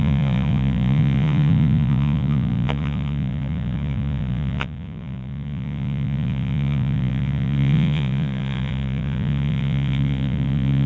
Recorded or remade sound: remade